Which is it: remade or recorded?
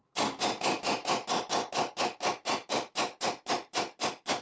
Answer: recorded